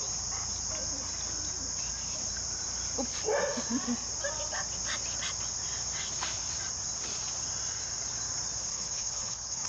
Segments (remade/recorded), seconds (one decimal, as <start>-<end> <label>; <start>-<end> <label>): 0.0-8.7 recorded; 8.7-9.7 remade